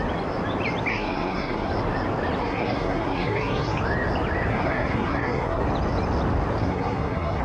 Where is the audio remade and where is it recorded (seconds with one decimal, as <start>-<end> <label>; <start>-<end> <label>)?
0.0-0.9 recorded; 0.9-1.7 remade; 1.7-2.4 recorded; 2.4-3.8 remade; 3.8-4.5 recorded; 4.5-5.6 remade; 5.6-6.6 recorded; 6.6-7.4 remade